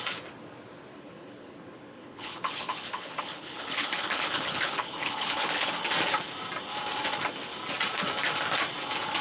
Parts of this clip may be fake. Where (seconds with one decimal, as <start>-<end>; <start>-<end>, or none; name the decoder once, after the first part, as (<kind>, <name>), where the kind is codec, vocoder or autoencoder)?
0.9-5.7 (codec, HILCodec)